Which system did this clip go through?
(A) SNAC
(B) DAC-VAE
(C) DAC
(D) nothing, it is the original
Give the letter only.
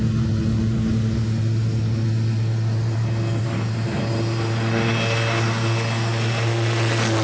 D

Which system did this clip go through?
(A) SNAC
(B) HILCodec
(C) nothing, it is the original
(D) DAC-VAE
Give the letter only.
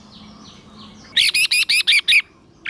C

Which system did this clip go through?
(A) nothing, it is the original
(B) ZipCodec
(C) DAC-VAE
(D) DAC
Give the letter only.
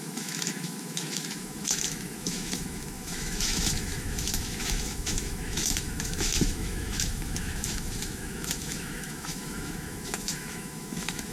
C